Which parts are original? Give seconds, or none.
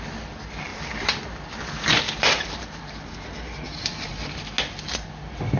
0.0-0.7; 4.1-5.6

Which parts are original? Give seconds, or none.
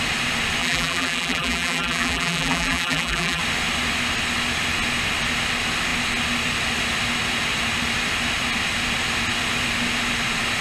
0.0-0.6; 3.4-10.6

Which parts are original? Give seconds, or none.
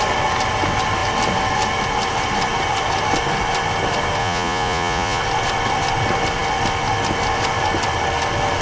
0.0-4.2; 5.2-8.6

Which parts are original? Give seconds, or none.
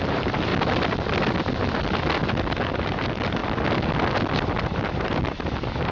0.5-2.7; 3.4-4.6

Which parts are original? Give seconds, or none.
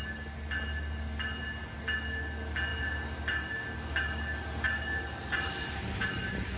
0.0-6.6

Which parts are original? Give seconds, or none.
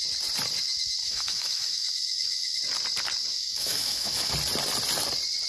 0.0-1.0; 2.6-3.3; 4.3-5.5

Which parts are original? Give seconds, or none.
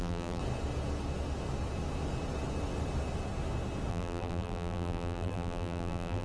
0.4-3.9